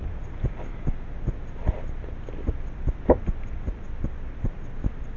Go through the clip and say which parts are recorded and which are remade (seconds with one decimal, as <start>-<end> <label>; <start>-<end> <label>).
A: 0.0-5.2 recorded